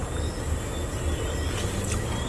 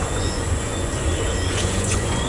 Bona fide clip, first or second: first